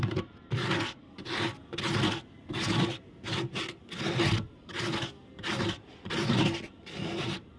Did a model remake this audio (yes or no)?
no